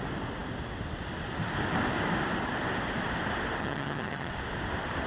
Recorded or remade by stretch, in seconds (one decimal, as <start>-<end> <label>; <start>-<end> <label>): 0.0-3.6 recorded; 3.6-4.3 remade; 4.3-5.1 recorded